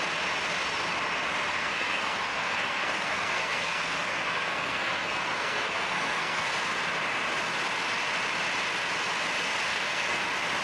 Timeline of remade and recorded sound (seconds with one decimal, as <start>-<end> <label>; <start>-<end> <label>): 0.0-1.5 recorded; 1.5-6.5 remade; 6.5-9.7 recorded; 9.7-10.2 remade; 10.2-10.6 recorded

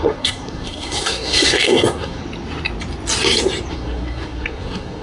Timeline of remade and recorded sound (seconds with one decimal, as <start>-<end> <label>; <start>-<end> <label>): 0.0-2.2 remade; 2.2-3.7 recorded; 3.7-5.0 remade

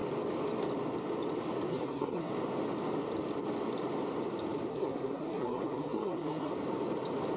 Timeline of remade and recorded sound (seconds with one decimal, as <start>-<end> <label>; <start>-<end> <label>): 0.0-1.7 recorded; 1.7-2.3 remade; 2.3-4.7 recorded; 4.7-6.5 remade; 6.5-7.4 recorded

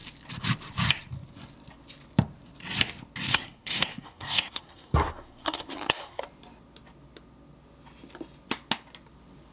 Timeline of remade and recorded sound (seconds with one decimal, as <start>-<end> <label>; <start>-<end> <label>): 0.0-3.3 recorded; 3.3-6.2 remade; 6.2-9.5 recorded

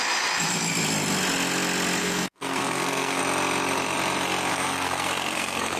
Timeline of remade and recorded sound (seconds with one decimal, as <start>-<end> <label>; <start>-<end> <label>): 0.0-2.0 recorded; 2.0-3.2 remade; 3.2-4.5 recorded; 4.5-5.8 remade

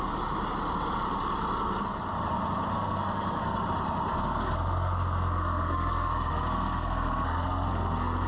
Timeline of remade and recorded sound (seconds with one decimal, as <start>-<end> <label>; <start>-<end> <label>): 0.0-2.7 recorded; 2.7-3.6 remade; 3.6-4.2 recorded; 4.2-8.3 remade

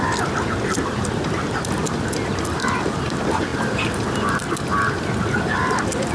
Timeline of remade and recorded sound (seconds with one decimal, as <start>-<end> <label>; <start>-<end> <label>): 0.0-6.1 recorded